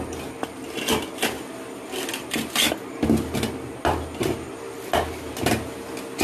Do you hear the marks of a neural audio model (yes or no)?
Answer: no